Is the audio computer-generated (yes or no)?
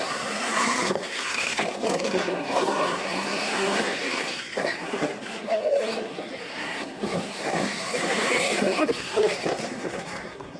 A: yes